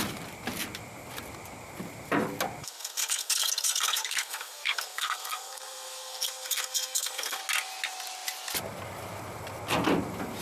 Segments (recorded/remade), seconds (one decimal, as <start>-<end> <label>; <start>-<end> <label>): 0.0-2.6 recorded; 2.6-7.4 remade; 7.4-10.4 recorded